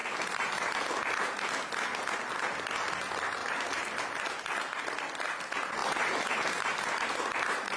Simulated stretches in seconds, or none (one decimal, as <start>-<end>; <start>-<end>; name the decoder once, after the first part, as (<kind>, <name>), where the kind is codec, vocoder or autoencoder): 0.0-0.8 (vocoder, BigVGAN v2); 3.4-4.0; 5.8-7.8